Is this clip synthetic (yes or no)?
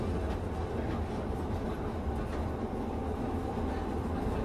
no